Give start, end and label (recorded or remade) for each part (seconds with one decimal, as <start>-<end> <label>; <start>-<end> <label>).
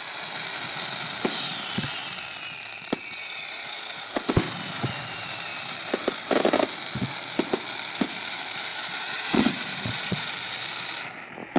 0.0-3.2 recorded; 3.2-4.3 remade; 4.3-8.7 recorded; 8.7-10.3 remade; 10.3-11.6 recorded